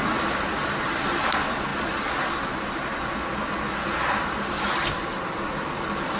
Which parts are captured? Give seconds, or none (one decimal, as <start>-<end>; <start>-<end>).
0.0-6.2